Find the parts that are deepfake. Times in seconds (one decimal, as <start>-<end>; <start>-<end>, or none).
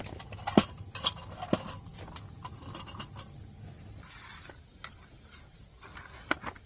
none